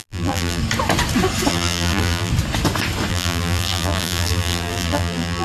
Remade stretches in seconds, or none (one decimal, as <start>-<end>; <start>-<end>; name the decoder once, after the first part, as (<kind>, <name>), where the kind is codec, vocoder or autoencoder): 0.0-0.6 (vocoder, BigVGAN v2); 1.5-2.3; 3.1-5.4